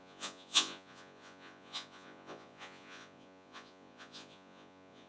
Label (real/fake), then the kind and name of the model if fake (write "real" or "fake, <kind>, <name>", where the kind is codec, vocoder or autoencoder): fake, vocoder, Vocos